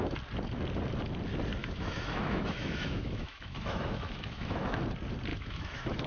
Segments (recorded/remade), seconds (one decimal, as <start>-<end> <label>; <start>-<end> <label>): 0.0-1.6 recorded; 1.6-4.8 remade; 4.8-5.3 recorded; 5.3-6.1 remade